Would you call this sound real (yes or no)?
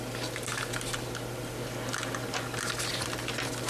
yes